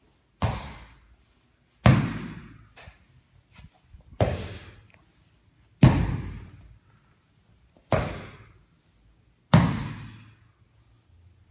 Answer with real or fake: real